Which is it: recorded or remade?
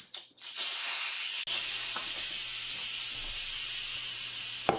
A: recorded